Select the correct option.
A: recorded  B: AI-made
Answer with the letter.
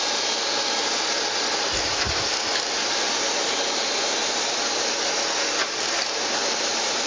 B